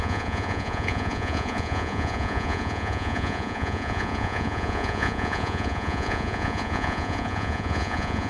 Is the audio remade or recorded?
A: remade